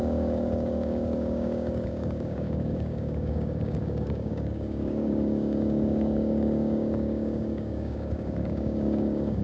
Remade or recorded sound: remade